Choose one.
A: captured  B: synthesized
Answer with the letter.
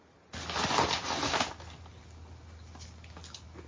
A